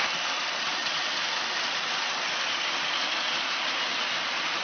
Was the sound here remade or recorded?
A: recorded